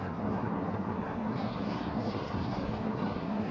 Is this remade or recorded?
remade